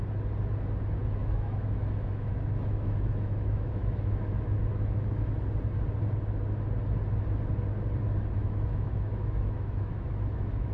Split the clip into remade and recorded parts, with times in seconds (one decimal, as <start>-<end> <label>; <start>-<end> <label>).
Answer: 0.0-1.2 recorded; 1.2-5.3 remade; 5.3-8.4 recorded; 8.4-10.7 remade